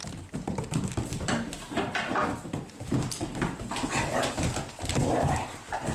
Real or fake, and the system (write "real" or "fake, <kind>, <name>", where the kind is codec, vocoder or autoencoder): real